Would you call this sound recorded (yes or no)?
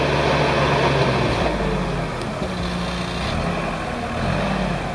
yes